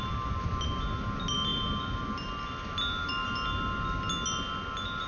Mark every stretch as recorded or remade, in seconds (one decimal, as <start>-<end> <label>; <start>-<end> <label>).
0.0-5.1 recorded